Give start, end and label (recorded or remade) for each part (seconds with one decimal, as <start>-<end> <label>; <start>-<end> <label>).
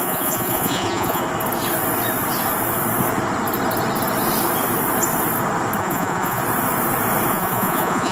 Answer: 0.0-1.2 remade; 1.2-5.8 recorded; 5.8-6.4 remade; 6.4-7.3 recorded; 7.3-8.1 remade